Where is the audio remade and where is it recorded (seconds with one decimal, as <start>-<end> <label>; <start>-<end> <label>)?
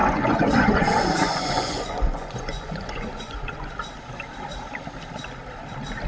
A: 0.0-3.7 remade; 3.7-6.1 recorded